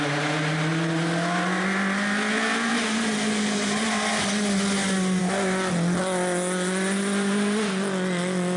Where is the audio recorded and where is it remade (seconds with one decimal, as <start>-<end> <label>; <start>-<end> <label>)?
0.0-8.6 recorded